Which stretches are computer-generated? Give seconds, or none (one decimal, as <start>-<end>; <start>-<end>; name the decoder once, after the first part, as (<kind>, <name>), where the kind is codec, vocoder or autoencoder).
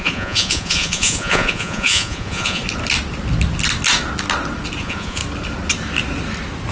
0.0-2.6 (vocoder, Vocos); 4.8-5.2